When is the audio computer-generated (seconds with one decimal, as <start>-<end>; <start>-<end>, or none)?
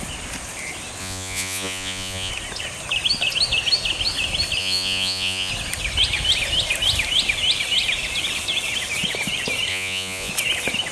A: 1.0-2.3; 4.6-5.5; 9.7-10.3